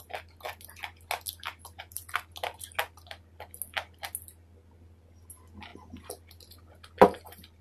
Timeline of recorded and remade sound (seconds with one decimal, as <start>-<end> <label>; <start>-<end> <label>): 0.0-7.6 recorded